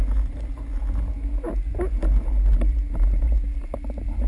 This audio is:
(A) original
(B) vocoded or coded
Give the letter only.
A